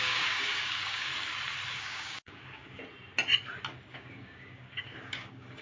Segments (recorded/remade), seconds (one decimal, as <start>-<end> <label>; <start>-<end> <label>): 0.0-1.1 remade; 1.1-1.8 recorded; 1.8-2.8 remade; 2.8-3.9 recorded; 3.9-5.6 remade